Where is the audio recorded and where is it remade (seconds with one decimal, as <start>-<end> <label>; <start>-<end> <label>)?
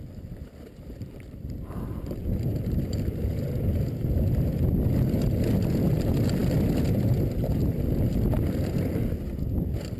0.0-3.3 remade; 3.3-5.9 recorded; 5.9-6.4 remade; 6.4-10.0 recorded